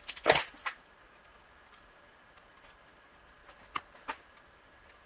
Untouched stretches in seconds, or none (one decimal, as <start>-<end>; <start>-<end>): 0.0-5.1